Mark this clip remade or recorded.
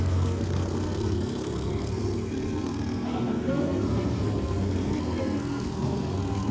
remade